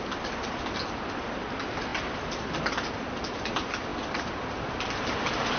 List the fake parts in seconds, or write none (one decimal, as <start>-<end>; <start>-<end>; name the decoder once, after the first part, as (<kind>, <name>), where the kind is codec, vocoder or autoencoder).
none